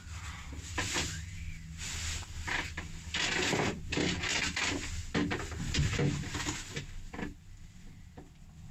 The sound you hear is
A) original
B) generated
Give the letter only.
A